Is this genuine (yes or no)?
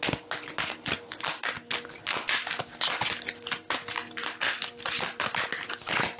yes